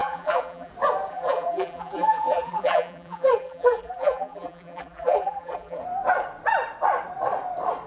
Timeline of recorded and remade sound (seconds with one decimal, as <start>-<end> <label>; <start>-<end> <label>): 0.0-0.7 remade; 0.7-1.1 recorded; 1.1-5.8 remade; 5.8-7.9 recorded